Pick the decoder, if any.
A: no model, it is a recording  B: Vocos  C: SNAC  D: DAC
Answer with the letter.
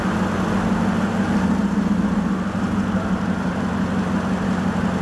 A